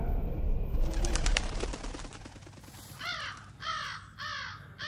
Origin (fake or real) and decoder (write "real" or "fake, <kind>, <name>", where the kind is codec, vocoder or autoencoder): real